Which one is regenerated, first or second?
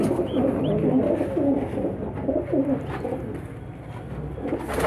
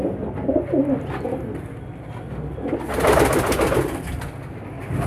first